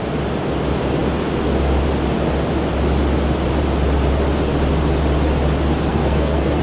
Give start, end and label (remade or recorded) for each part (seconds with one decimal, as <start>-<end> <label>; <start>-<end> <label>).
0.0-5.9 recorded; 5.9-6.6 remade